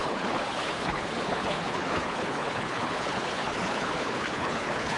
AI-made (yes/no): yes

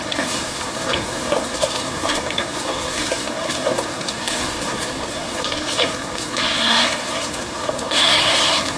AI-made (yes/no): yes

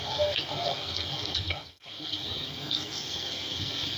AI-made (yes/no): yes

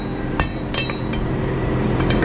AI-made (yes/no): yes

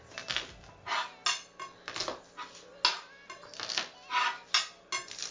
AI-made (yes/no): no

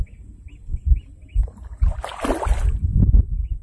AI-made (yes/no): no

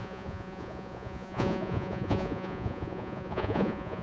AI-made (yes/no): yes